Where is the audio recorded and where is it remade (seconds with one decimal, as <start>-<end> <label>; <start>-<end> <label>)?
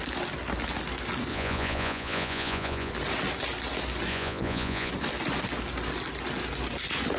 0.0-1.3 recorded; 1.3-2.9 remade; 2.9-4.1 recorded; 4.1-4.9 remade; 4.9-7.2 recorded